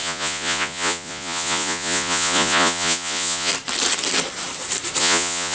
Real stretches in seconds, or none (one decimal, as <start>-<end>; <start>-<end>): 3.5-5.0

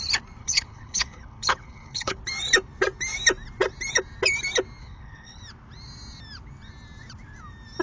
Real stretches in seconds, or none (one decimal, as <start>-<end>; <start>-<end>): 0.0-0.4; 2.2-4.8; 5.4-7.8